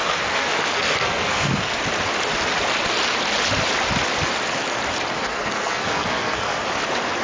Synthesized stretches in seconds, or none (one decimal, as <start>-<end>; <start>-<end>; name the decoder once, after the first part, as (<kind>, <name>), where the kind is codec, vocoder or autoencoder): 0.0-1.8 (codec, SNAC); 5.2-6.6